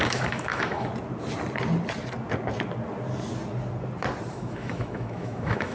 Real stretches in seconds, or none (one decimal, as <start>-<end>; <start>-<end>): 0.9-4.3